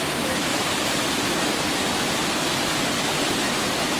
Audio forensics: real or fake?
real